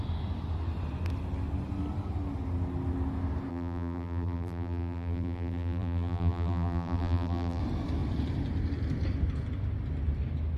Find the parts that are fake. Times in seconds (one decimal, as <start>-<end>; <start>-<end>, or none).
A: 3.5-7.6